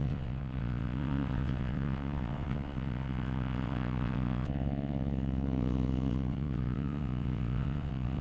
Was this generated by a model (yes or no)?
yes